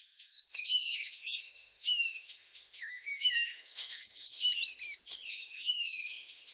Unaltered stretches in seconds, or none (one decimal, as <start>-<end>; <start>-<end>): 4.5-5.3